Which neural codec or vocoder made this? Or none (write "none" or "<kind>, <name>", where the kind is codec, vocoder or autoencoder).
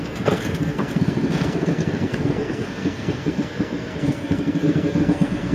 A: codec, SNAC